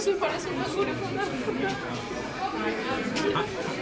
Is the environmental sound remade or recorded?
recorded